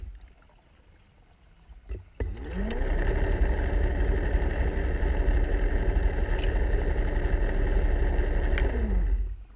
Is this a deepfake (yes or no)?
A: no